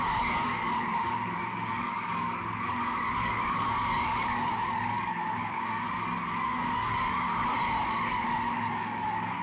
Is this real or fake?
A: fake